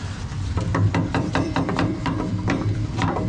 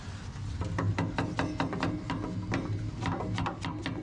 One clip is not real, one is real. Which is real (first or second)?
second